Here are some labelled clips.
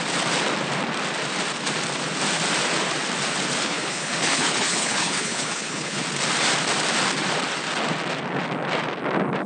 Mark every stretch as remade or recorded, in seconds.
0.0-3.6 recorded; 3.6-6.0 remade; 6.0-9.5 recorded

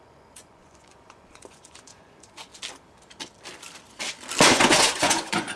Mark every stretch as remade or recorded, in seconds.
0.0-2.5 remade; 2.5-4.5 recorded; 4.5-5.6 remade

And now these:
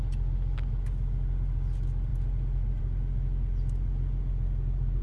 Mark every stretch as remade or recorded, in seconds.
0.0-5.0 recorded

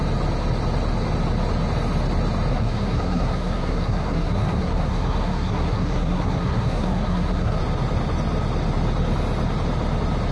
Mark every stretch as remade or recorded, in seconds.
0.0-2.5 recorded; 2.5-7.6 remade; 7.6-10.3 recorded